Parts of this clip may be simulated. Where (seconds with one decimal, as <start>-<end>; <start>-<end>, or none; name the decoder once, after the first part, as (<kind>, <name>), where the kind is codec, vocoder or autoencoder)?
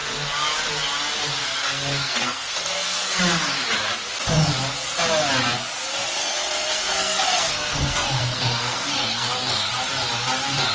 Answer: 1.4-3.2 (codec, SNAC); 6.2-9.7